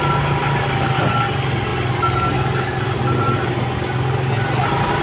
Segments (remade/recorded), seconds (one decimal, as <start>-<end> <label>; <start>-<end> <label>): 0.0-5.0 recorded